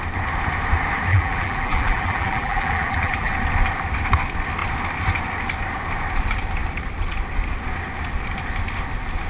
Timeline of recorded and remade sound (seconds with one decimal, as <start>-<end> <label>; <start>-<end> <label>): 0.0-1.1 recorded; 1.1-3.3 remade; 3.3-9.3 recorded